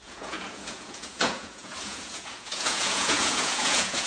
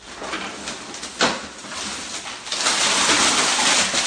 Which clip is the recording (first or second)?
second